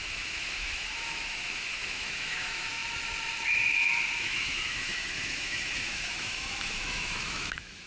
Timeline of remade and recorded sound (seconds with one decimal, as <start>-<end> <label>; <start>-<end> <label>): 0.0-2.8 remade; 2.8-4.2 recorded; 4.2-7.9 remade